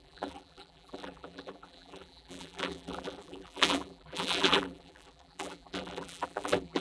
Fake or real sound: fake